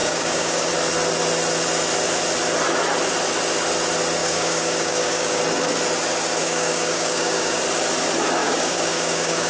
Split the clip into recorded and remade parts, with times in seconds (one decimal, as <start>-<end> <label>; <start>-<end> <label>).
0.0-0.7 remade; 0.7-4.2 recorded; 4.2-5.4 remade; 5.4-6.4 recorded; 6.4-7.6 remade; 7.6-8.4 recorded; 8.4-9.5 remade